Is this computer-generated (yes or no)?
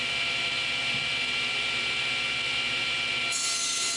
no